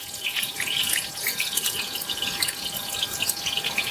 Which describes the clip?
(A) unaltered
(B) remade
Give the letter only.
B